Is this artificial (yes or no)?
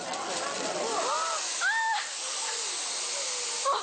no